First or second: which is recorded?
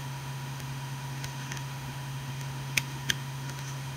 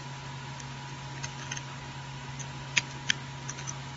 second